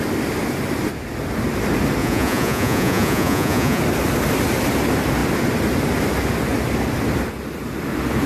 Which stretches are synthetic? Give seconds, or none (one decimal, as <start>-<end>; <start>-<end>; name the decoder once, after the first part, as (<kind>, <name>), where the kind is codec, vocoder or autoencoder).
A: 2.0-3.8 (vocoder, Vocos)